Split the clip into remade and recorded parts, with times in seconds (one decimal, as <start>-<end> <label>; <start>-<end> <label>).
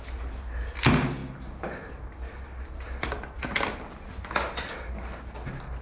0.0-5.8 recorded